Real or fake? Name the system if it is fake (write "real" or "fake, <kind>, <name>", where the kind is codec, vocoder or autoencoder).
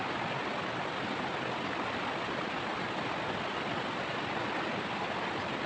real